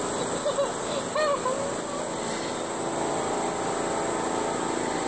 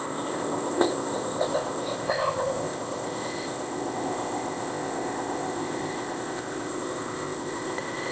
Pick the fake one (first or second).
second